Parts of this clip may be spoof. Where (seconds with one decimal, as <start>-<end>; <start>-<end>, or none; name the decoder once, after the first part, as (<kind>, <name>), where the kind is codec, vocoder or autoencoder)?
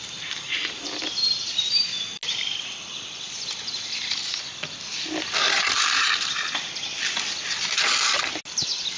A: none